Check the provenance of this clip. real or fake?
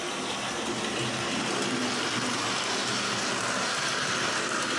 real